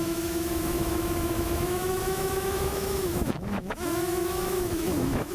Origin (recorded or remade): remade